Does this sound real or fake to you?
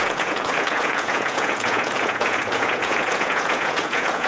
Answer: fake